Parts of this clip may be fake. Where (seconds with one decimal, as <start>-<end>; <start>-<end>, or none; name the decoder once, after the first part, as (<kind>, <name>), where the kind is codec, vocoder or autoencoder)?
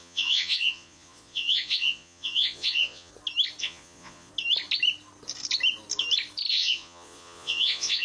0.0-3.1 (vocoder, Vocos); 3.6-4.3; 6.5-8.0